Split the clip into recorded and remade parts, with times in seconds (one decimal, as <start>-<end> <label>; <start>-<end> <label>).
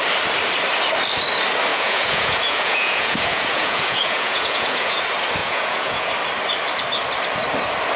0.0-1.7 recorded; 1.7-5.0 remade; 5.0-5.4 recorded; 5.4-6.1 remade; 6.1-8.0 recorded